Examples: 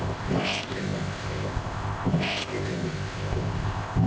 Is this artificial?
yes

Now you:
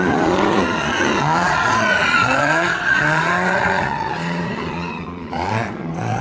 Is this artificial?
yes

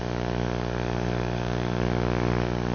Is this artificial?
yes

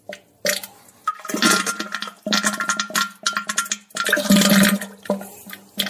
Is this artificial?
no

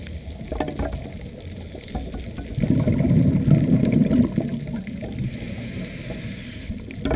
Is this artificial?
no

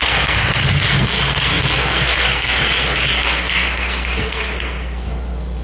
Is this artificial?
yes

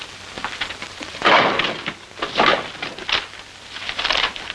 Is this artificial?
no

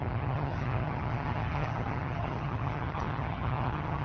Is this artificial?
yes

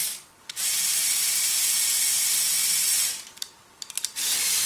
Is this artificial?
no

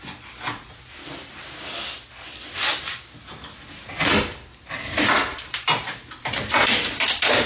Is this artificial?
no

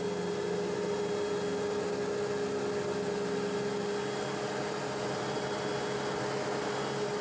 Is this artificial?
no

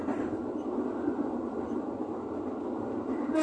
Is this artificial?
no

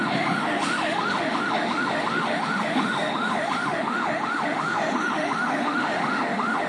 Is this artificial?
yes